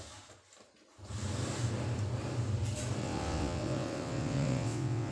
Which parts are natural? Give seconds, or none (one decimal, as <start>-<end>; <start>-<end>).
0.0-3.0